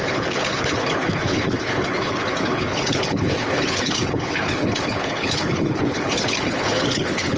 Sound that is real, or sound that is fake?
fake